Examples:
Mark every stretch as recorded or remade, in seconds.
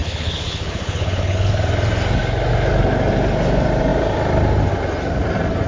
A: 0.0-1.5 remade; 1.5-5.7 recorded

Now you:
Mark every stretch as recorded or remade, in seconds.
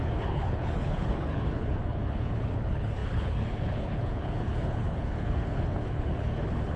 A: 0.0-6.8 remade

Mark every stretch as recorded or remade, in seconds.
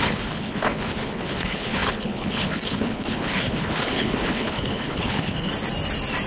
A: 0.0-5.5 remade; 5.5-6.3 recorded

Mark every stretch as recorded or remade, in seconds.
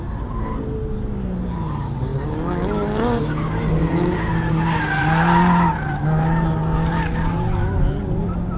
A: 0.0-8.6 recorded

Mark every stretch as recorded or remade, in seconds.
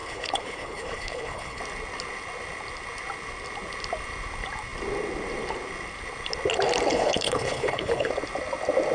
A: 0.0-1.6 remade; 1.6-6.9 recorded; 6.9-8.1 remade; 8.1-8.9 recorded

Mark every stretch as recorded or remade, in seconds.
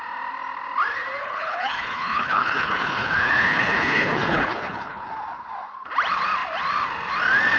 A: 0.0-1.2 recorded; 1.2-5.1 remade; 5.1-7.6 recorded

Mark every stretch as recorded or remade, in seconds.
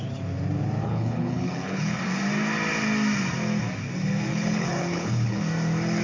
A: 0.0-0.8 recorded; 0.8-2.0 remade; 2.0-4.3 recorded; 4.3-5.4 remade; 5.4-6.0 recorded